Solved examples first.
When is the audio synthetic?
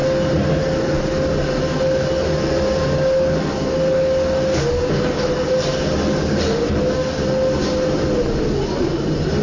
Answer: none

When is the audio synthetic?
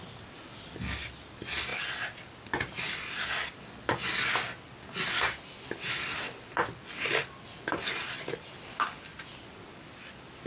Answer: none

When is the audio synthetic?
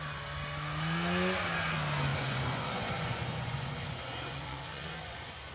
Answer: 2.1-5.5 (vocoder, Vocos)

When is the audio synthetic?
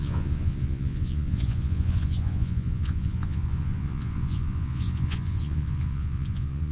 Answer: 0.0-6.7 (vocoder, Vocos)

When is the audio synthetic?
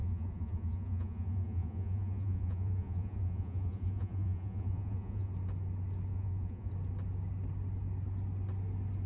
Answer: 0.0-5.3 (vocoder, Vocos); 6.1-6.7